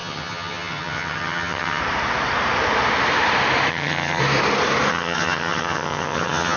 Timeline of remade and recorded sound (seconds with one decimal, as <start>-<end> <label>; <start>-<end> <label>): 0.0-1.8 remade; 1.8-3.7 recorded; 3.7-4.2 remade; 4.2-4.9 recorded; 4.9-6.6 remade